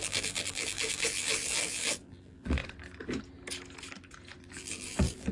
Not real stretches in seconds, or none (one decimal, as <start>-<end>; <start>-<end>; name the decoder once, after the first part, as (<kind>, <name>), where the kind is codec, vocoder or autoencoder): 0.0-2.6 (vocoder, BigVGAN v2); 4.4-5.3